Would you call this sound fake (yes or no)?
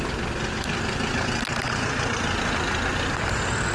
no